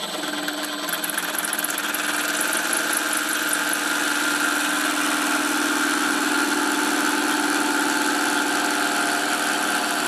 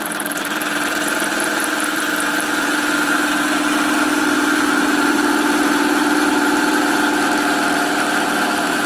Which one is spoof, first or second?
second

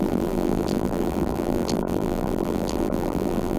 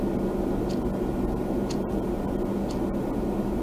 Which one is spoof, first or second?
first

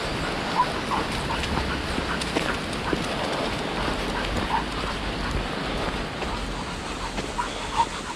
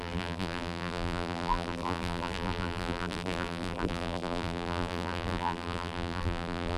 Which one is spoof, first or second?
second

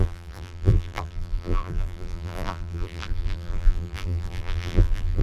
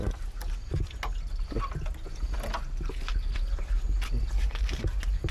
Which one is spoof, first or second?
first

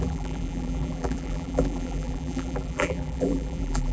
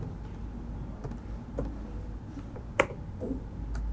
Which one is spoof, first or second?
first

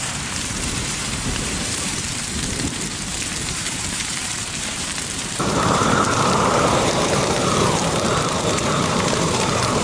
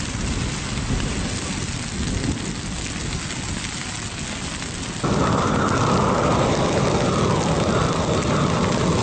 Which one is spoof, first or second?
first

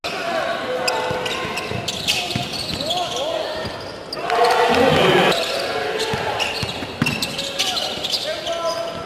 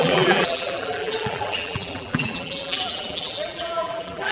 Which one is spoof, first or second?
second